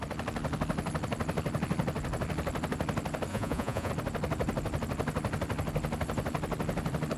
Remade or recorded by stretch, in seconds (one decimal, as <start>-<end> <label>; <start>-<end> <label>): 0.0-3.3 recorded; 3.3-3.9 remade; 3.9-7.2 recorded